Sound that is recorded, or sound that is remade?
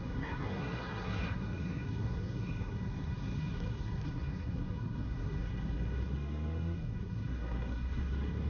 remade